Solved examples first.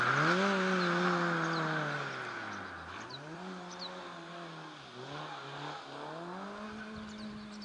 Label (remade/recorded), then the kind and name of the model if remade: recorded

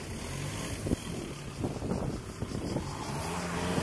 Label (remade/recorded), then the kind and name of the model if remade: recorded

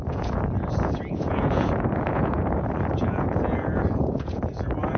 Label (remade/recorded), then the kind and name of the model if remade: remade, vocoder, Vocos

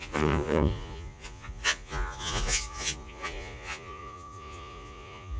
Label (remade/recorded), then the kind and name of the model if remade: remade, vocoder, Vocos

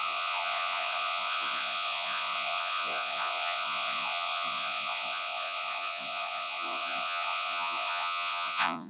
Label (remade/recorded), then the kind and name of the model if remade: remade, vocoder, Vocos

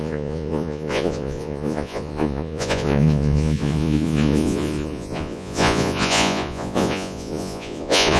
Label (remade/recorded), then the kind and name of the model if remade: remade, vocoder, Vocos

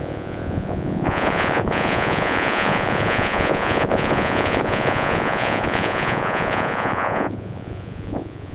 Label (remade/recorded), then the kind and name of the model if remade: remade, vocoder, Vocos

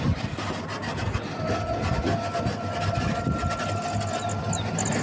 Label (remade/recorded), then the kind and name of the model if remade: recorded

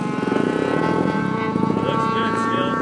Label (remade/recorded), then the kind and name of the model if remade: remade, vocoder, Vocos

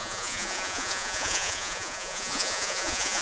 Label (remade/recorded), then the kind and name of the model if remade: remade, vocoder, Vocos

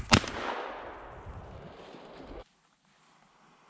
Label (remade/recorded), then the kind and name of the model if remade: recorded